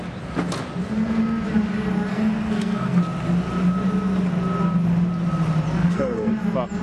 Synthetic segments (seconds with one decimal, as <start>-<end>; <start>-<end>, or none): 2.1-3.0; 5.8-6.3